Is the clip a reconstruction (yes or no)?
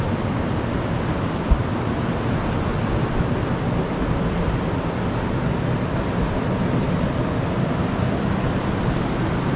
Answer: no